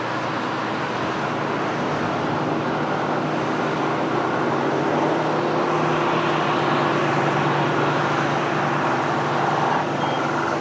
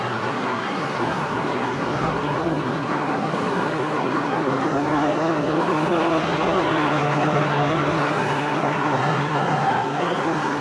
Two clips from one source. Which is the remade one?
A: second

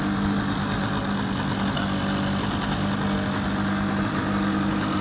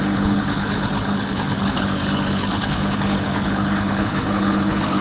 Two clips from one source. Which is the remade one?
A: second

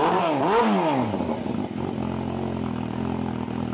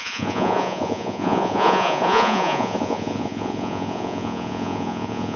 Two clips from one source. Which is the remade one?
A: second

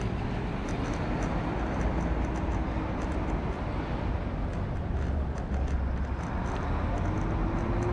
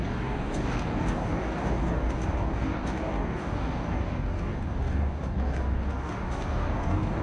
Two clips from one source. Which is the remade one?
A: second